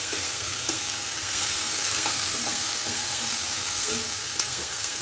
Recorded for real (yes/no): no